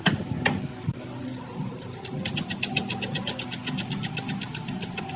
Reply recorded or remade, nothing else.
recorded